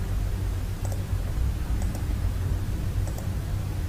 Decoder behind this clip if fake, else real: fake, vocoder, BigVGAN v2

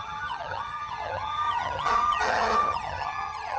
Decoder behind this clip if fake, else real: fake, vocoder, HiFi-GAN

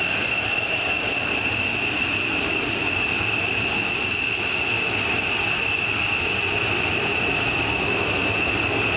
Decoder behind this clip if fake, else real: real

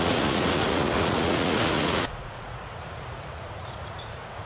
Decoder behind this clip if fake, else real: fake, vocoder, Vocos